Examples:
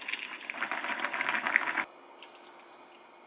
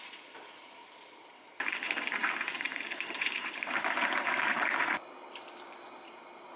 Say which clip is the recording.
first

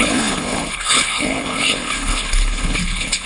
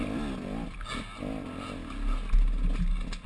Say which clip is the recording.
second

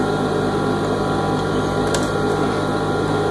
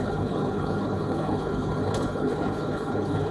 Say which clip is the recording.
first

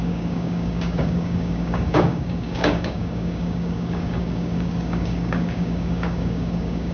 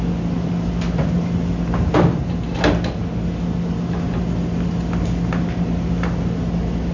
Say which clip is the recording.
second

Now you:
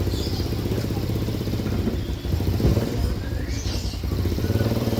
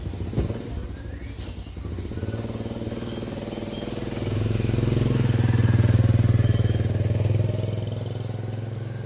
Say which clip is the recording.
second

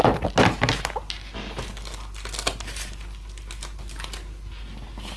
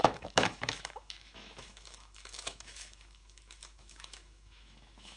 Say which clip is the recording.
first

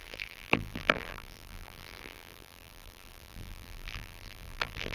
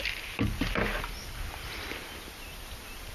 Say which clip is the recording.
second